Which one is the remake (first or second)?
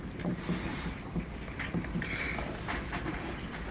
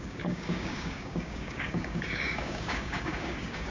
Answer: second